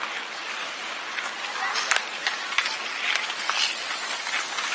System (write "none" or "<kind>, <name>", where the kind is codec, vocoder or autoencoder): none